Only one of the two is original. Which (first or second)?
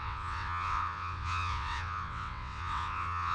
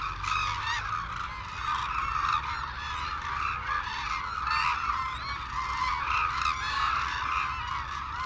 second